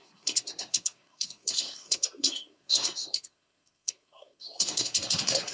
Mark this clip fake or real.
fake